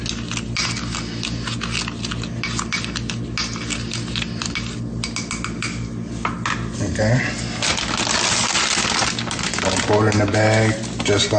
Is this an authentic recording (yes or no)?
yes